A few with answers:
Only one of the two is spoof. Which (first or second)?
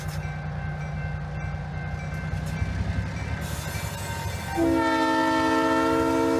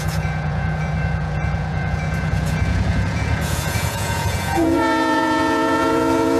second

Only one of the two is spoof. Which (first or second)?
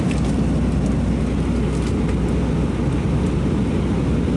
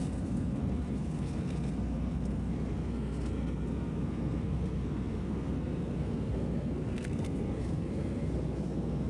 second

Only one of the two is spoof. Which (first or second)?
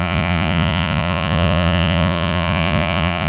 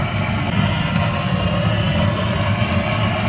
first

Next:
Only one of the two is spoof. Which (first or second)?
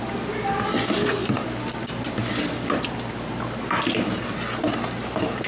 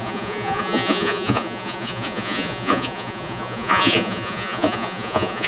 second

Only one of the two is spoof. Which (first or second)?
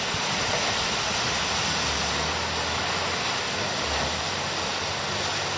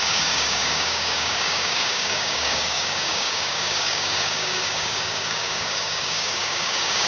second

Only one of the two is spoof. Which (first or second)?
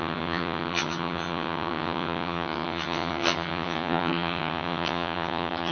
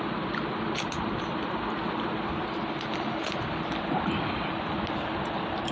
first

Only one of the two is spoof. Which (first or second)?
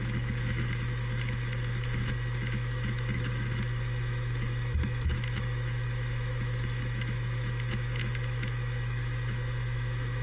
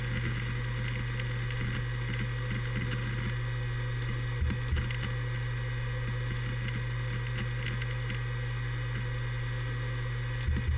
first